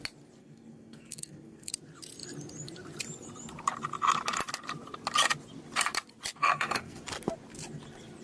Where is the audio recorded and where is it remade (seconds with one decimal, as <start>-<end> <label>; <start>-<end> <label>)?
0.0-0.4 recorded; 0.4-1.7 remade; 1.7-6.4 recorded; 6.4-7.0 remade; 7.0-8.2 recorded